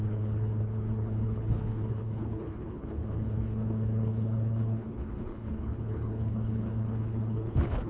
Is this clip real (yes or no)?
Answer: no